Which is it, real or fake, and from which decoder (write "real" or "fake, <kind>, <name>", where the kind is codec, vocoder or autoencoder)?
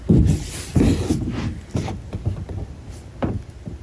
real